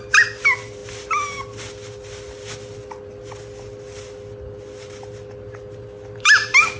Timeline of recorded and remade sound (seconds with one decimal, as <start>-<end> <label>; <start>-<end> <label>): 0.0-6.8 recorded